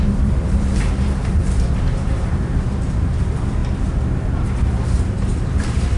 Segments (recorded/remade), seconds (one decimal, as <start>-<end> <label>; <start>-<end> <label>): 0.0-3.6 remade; 3.6-5.0 recorded; 5.0-6.0 remade